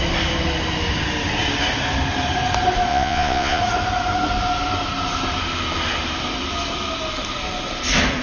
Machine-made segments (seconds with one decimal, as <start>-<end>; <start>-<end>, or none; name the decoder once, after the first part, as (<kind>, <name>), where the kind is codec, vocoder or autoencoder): 2.9-3.6 (vocoder, Vocos)